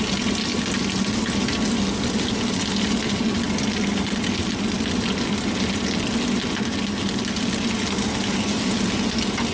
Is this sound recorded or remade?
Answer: recorded